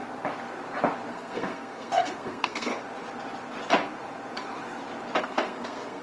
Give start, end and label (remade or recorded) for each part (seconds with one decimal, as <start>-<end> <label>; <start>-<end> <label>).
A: 0.0-1.1 recorded; 1.1-2.7 remade; 2.7-5.2 recorded; 5.2-6.0 remade